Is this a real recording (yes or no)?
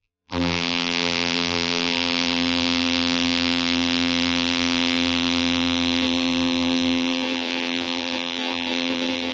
no